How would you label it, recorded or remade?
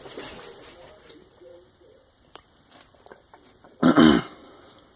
remade